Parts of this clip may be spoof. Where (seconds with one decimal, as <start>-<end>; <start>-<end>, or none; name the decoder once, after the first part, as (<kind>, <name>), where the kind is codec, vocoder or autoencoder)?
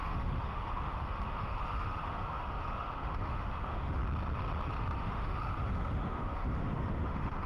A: 0.0-4.0 (autoencoder, DAC-VAE); 4.8-7.5